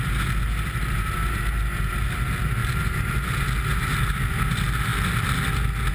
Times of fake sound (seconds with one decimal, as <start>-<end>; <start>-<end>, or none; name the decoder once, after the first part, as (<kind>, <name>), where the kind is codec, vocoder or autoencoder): none